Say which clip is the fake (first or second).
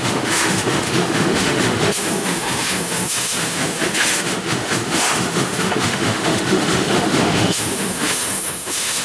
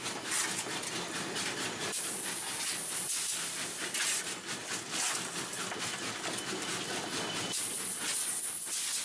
first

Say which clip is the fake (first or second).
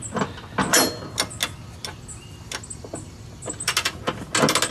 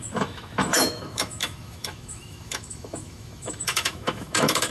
second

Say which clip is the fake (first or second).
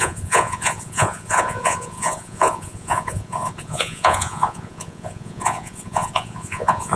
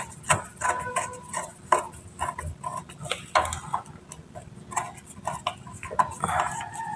first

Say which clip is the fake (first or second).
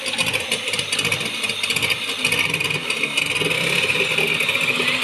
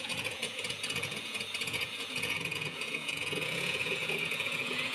second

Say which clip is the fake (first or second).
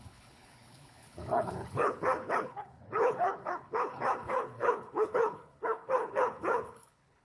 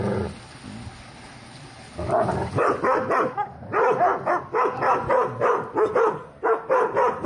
first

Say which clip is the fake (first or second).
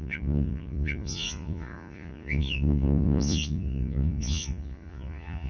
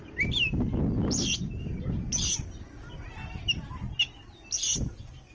first